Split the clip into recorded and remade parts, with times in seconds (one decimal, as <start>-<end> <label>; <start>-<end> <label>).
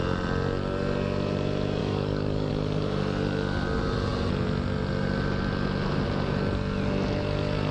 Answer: 0.0-1.8 recorded; 1.8-2.5 remade; 2.5-7.7 recorded